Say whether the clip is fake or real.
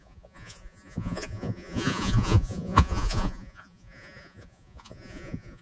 fake